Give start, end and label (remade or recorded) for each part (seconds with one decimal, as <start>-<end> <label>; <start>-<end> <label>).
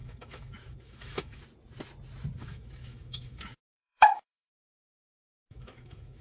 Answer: 0.0-1.4 remade; 1.4-2.4 recorded; 2.4-6.2 remade